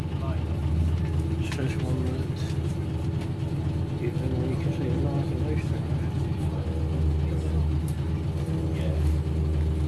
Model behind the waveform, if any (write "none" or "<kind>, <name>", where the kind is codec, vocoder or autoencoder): none